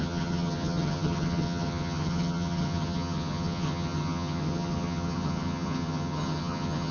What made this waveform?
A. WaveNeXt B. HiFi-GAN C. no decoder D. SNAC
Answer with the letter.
B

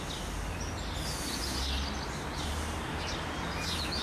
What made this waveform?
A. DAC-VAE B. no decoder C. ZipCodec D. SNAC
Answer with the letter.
B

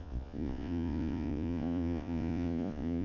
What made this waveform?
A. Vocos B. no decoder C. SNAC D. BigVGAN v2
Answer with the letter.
A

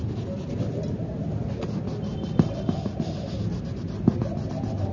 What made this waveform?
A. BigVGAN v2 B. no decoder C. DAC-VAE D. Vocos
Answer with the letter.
B